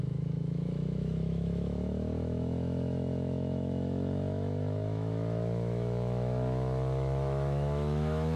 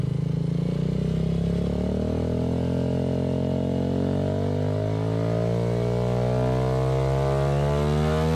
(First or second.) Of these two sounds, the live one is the second